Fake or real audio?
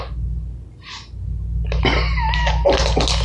real